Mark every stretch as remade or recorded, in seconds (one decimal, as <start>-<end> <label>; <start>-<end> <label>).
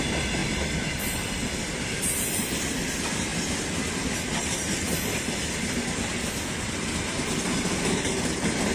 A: 0.0-8.7 recorded